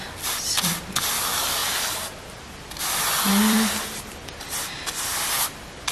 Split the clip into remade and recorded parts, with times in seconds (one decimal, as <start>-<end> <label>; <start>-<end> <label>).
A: 0.0-3.3 recorded; 3.3-4.4 remade; 4.4-5.9 recorded